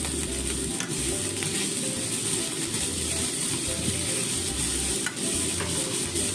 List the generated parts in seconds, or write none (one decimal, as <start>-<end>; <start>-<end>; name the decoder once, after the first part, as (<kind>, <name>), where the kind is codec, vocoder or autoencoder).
2.9-3.9 (vocoder, BigVGAN v2)